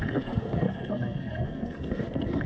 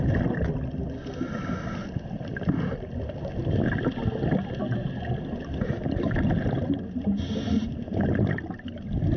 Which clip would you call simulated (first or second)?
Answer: first